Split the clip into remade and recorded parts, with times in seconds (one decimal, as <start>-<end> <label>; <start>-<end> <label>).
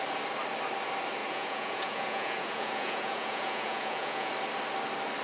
0.0-1.2 recorded; 1.2-4.3 remade; 4.3-5.2 recorded